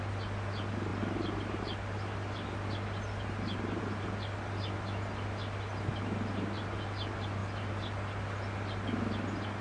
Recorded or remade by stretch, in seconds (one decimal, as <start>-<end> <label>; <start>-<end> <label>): 0.0-9.6 recorded